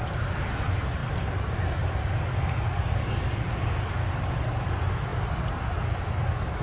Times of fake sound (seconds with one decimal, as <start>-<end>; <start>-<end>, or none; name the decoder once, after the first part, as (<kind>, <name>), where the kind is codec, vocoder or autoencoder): none